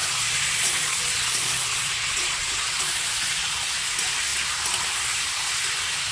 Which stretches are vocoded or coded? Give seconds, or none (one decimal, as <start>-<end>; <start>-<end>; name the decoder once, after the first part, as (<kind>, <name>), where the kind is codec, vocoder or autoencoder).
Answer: 0.0-3.7 (vocoder, Vocos)